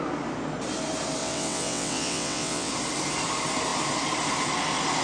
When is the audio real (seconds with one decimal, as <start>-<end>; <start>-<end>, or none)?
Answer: 0.0-1.2; 2.7-5.0